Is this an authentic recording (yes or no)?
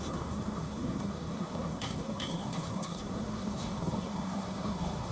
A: no